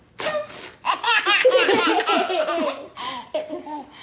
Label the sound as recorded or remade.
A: recorded